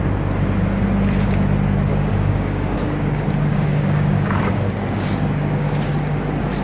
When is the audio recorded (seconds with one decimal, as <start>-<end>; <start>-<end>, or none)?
0.0-1.9; 5.9-6.6